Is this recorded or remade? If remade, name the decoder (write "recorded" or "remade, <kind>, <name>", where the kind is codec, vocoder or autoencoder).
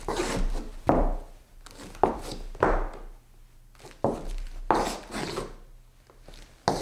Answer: recorded